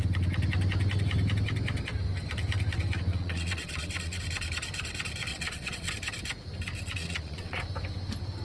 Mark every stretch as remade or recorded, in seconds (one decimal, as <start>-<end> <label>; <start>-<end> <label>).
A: 0.0-3.1 recorded; 3.1-4.2 remade; 4.2-5.3 recorded; 5.3-5.9 remade; 5.9-7.0 recorded; 7.0-7.6 remade; 7.6-8.4 recorded